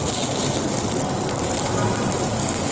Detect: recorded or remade recorded